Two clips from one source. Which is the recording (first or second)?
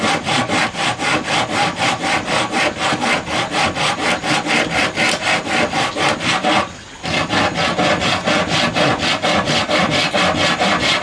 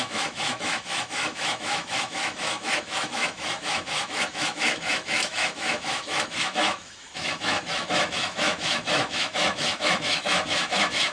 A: first